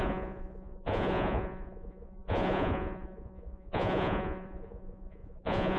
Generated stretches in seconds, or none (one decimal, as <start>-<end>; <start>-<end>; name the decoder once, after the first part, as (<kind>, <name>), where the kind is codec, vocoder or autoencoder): 0.0-5.8 (vocoder, Vocos)